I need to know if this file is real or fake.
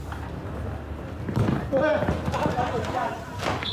real